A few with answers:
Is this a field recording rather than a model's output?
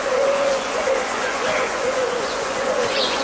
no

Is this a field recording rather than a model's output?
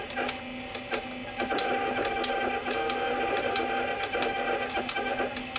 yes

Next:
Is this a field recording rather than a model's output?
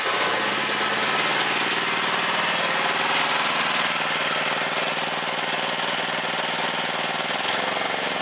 yes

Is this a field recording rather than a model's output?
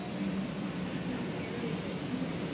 yes